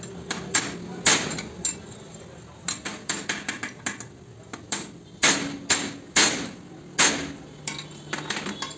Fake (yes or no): no